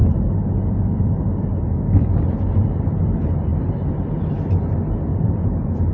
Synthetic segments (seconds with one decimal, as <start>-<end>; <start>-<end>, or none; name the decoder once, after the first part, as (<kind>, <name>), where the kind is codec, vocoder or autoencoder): 5.1-5.9 (vocoder, Vocos)